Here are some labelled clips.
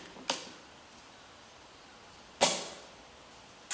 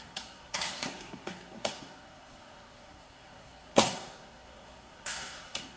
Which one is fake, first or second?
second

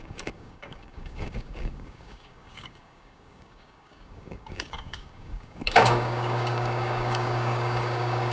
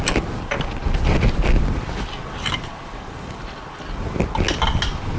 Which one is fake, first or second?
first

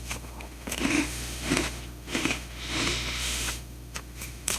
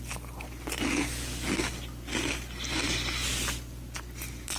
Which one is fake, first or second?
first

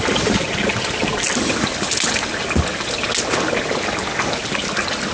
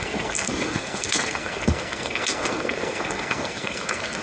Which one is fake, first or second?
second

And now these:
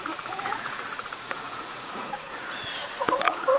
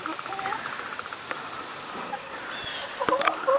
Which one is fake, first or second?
first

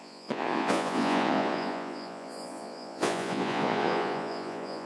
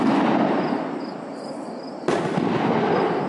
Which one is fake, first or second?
first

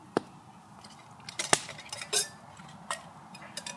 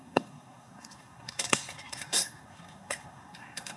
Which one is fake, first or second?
second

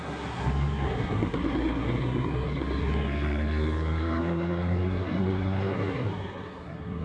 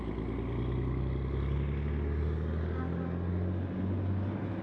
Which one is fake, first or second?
first